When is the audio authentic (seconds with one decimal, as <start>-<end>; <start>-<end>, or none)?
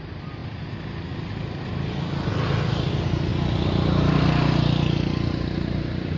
0.0-6.2